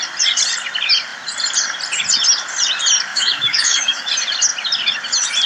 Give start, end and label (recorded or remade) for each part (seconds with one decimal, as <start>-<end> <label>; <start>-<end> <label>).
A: 0.0-3.1 recorded; 3.1-4.1 remade; 4.1-5.5 recorded